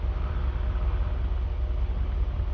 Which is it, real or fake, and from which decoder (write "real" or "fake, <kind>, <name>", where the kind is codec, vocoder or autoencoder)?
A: real